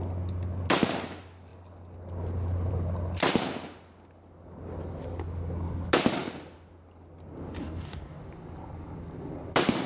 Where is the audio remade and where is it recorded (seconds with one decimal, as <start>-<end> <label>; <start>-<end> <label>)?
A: 0.0-7.6 recorded; 7.6-8.2 remade; 8.2-9.9 recorded